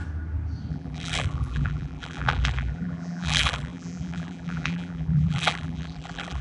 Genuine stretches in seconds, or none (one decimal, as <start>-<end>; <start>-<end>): 0.0-0.7